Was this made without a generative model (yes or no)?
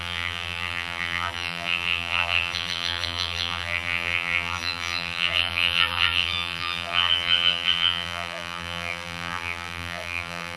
no